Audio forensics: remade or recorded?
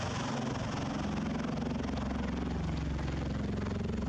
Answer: recorded